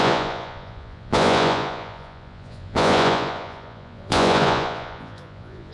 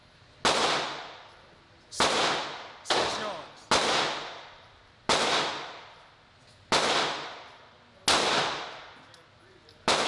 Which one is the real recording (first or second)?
second